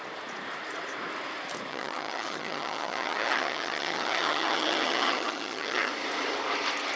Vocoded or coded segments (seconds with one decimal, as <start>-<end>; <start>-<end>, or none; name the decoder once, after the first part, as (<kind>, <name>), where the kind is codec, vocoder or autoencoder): 1.7-5.9 (vocoder, HiFi-GAN)